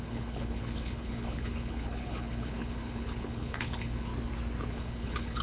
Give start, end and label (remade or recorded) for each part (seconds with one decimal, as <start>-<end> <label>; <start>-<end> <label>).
0.0-4.1 remade; 4.1-4.7 recorded; 4.7-5.4 remade